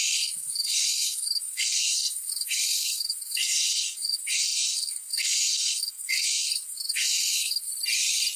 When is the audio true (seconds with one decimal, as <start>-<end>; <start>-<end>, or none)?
7.7-8.4